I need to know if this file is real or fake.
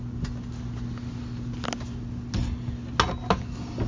real